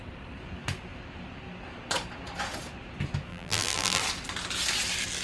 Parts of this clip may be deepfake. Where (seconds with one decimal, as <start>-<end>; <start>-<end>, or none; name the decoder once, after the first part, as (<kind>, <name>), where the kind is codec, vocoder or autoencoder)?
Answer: 3.3-4.0 (vocoder, BigVGAN v2)